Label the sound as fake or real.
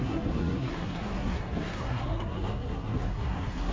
fake